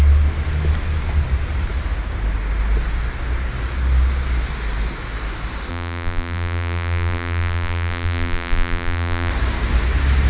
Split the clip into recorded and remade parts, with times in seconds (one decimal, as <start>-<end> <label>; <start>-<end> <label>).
0.0-5.7 recorded; 5.7-9.3 remade; 9.3-10.3 recorded